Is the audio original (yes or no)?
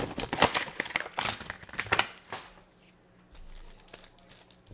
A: yes